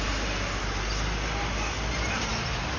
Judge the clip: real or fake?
real